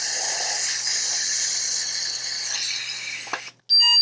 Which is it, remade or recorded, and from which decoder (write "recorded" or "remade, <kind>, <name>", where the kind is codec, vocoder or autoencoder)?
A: recorded